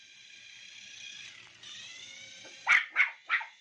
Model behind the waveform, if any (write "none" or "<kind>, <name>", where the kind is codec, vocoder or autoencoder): none